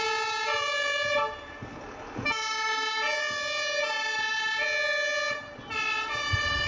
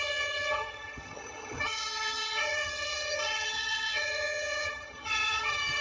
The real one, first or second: first